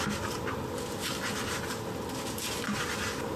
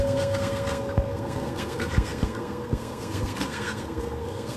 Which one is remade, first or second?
second